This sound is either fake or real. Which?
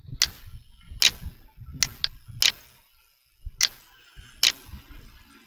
real